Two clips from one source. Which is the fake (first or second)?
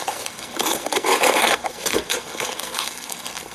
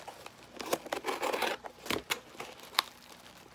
first